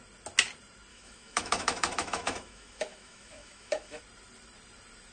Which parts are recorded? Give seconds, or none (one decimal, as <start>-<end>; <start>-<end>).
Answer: 0.0-0.9; 4.0-5.1